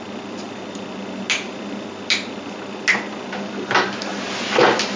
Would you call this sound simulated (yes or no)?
no